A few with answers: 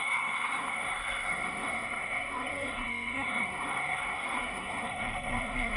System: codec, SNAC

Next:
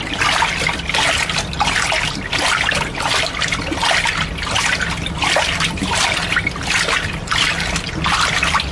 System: none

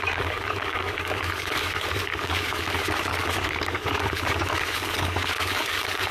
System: codec, DAC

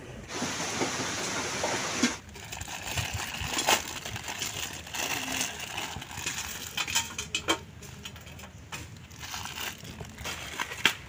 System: none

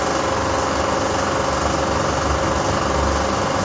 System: none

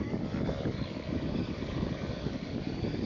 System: codec, DAC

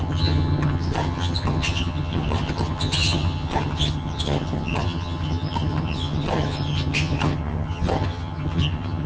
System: vocoder, HiFi-GAN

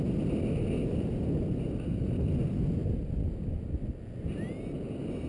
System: none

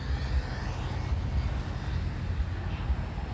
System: none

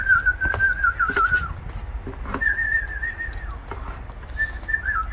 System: none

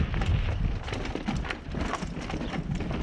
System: none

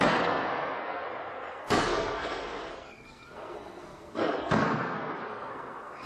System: codec, SNAC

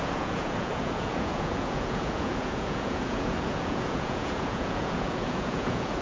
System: vocoder, Vocos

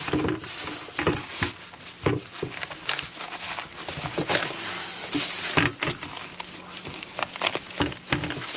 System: none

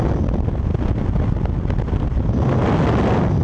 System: none